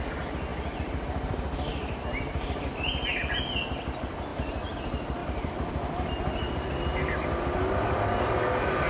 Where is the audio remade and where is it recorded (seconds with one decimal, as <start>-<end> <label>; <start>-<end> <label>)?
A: 0.0-0.5 recorded; 0.5-3.1 remade; 3.1-5.2 recorded; 5.2-6.1 remade; 6.1-6.9 recorded; 6.9-8.4 remade; 8.4-8.9 recorded

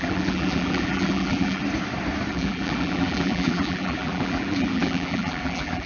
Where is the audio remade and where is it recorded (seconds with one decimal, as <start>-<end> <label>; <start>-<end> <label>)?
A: 0.0-1.6 remade; 1.6-2.3 recorded; 2.3-5.9 remade